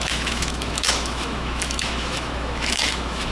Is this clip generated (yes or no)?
yes